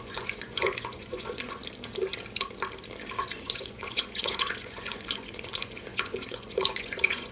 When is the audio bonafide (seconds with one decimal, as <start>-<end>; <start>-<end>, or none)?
1.6-3.2